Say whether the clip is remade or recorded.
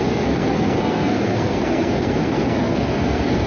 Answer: remade